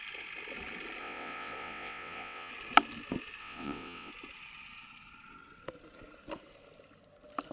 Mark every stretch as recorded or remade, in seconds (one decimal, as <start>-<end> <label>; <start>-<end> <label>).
0.0-1.0 recorded; 1.0-2.5 remade; 2.5-3.4 recorded; 3.4-4.1 remade; 4.1-7.5 recorded